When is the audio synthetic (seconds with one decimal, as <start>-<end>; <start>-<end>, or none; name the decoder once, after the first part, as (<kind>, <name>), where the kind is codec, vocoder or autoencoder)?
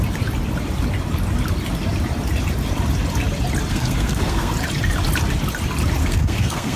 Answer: 3.7-4.5 (codec, SNAC); 6.0-6.8